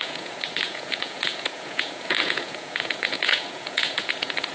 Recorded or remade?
remade